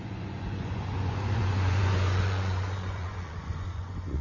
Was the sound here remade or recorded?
remade